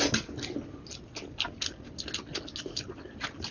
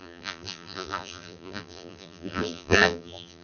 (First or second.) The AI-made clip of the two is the second